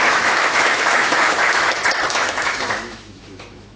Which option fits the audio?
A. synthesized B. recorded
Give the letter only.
A